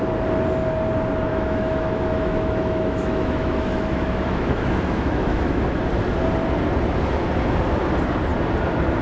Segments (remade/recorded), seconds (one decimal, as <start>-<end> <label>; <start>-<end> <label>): 0.0-1.3 recorded; 1.3-5.6 remade; 5.6-9.0 recorded